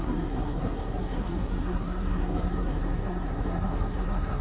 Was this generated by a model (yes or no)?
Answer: yes